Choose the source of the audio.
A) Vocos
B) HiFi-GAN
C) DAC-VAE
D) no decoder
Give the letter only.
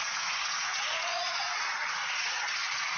A